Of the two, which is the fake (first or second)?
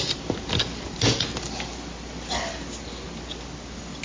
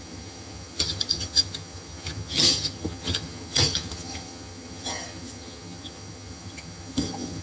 second